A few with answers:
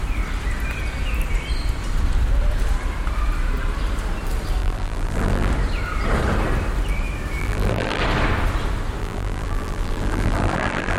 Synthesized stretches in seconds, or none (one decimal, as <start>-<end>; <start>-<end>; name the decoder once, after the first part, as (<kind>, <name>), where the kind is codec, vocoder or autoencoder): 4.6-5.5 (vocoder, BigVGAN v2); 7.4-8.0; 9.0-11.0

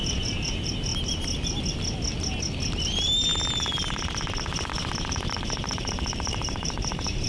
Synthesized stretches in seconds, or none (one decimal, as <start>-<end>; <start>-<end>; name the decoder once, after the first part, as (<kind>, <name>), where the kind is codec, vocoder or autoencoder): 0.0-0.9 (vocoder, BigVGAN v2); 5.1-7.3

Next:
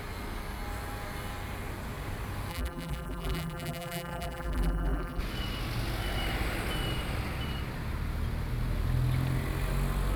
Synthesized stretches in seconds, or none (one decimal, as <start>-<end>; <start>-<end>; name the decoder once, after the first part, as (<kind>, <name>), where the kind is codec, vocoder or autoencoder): 2.5-5.2 (vocoder, BigVGAN v2)

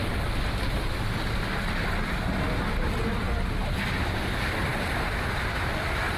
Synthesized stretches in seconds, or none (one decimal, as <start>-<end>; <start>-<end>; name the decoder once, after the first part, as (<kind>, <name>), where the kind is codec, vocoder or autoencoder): 4.7-5.8 (vocoder, BigVGAN v2)